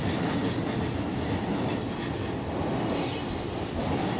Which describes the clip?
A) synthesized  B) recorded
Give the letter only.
B